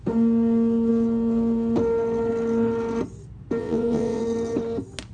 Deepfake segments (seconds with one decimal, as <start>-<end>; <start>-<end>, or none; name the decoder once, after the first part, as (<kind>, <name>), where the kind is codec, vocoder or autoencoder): 3.6-4.2 (vocoder, WaveNeXt)